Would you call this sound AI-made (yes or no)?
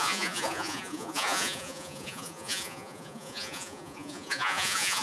yes